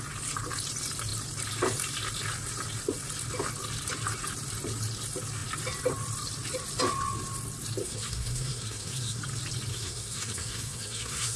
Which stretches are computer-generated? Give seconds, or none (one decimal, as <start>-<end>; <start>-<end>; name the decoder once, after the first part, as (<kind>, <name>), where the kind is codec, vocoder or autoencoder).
7.8-9.2 (codec, SNAC); 9.7-11.4